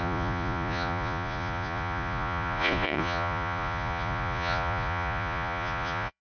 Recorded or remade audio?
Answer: remade